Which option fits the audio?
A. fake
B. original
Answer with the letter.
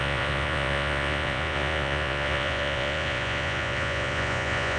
A